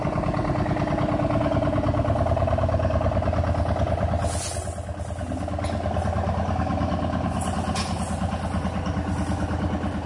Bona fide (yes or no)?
yes